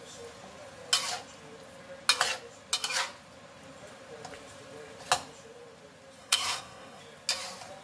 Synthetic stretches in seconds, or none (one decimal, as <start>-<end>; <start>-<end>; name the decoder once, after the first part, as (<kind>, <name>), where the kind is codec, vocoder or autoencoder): 6.2-7.0 (codec, SNAC)